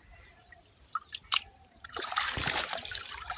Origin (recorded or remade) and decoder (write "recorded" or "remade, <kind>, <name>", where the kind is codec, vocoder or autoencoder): remade, vocoder, BigVGAN v2